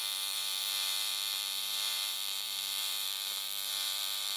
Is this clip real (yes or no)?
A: no